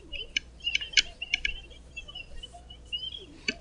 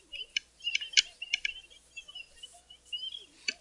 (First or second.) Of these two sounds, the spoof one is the first